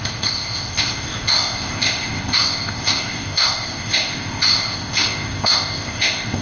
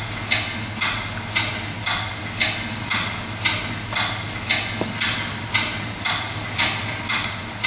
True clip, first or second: second